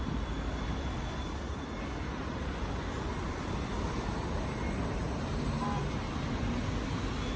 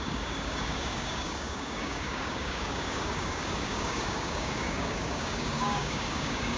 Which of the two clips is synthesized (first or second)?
second